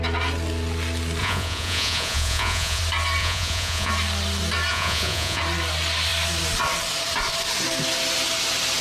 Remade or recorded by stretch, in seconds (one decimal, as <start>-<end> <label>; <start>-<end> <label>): 0.0-1.2 recorded; 1.2-2.8 remade; 2.8-3.2 recorded; 3.2-3.9 remade; 3.9-4.7 recorded; 4.7-5.4 remade; 5.4-8.8 recorded